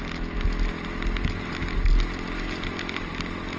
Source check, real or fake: real